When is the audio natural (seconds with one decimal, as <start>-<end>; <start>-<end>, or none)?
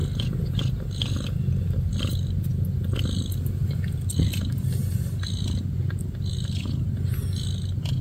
0.0-8.0